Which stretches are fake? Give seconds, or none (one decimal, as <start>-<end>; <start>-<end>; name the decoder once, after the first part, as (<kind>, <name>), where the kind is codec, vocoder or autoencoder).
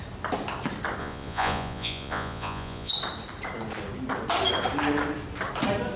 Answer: 1.0-2.9 (vocoder, Vocos)